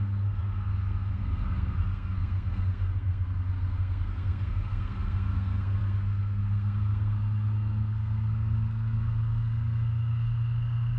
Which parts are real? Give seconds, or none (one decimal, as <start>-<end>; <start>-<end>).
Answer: none